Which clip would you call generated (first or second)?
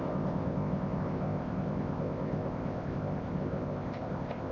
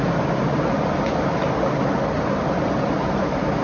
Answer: first